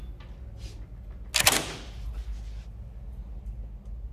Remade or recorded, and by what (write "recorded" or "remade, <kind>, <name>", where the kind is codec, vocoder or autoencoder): recorded